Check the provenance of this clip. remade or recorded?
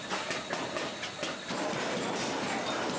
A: recorded